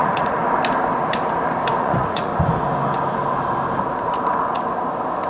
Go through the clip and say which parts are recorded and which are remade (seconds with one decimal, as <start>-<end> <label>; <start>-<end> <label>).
0.0-0.4 remade; 0.4-1.8 recorded; 1.8-2.3 remade; 2.3-5.3 recorded